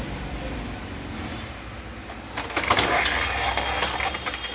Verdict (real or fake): real